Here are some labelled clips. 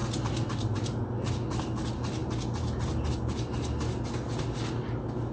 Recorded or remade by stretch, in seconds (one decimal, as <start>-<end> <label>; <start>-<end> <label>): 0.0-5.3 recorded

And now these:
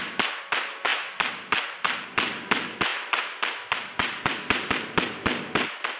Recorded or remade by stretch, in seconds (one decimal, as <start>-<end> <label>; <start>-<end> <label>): 0.0-2.9 recorded; 2.9-4.7 remade; 4.7-6.0 recorded

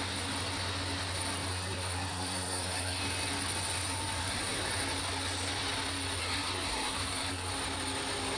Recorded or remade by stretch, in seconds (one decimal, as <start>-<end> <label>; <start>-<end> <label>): 0.0-1.5 recorded; 1.5-3.0 remade; 3.0-4.2 recorded; 4.2-4.7 remade; 4.7-6.2 recorded; 6.2-7.5 remade; 7.5-8.4 recorded

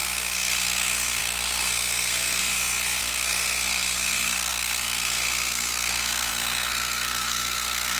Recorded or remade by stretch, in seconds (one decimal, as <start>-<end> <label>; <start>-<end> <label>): 0.0-2.4 remade; 2.4-3.0 recorded; 3.0-8.0 remade

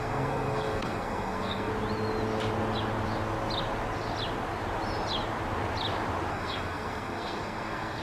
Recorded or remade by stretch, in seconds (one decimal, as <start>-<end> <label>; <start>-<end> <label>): 0.0-1.7 remade; 1.7-6.3 recorded; 6.3-8.0 remade

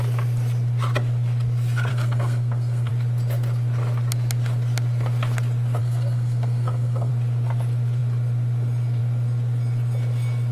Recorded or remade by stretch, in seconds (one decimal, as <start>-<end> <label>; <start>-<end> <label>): 0.0-1.9 recorded; 1.9-2.9 remade; 2.9-5.8 recorded; 5.8-7.1 remade; 7.1-10.5 recorded

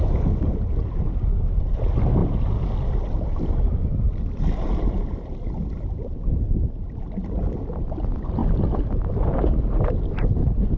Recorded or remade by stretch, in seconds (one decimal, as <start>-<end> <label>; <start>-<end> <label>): 0.0-10.8 recorded